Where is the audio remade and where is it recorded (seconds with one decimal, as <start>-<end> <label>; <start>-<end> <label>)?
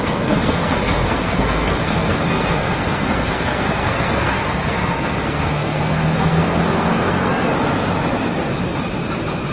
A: 0.0-7.5 remade; 7.5-9.5 recorded